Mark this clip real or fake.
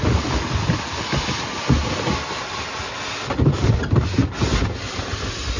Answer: real